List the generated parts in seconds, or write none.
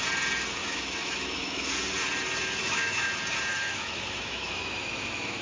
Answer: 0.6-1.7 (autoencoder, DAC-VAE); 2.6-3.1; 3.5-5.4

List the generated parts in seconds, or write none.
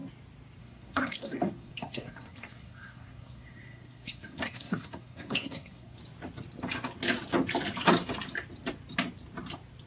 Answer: 0.6-6.0 (codec, SNAC)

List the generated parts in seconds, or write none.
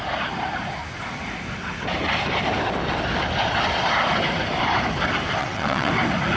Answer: 5.4-5.9 (vocoder, WaveNeXt)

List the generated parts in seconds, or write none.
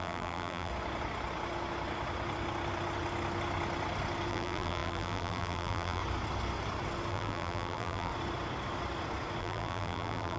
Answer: 0.0-0.7 (vocoder, BigVGAN v2); 4.3-6.0; 7.1-8.1; 9.4-10.4